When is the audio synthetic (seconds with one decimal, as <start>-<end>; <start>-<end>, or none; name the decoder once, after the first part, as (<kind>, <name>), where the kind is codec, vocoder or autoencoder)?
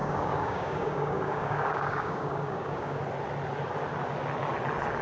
0.0-3.0 (codec, DAC)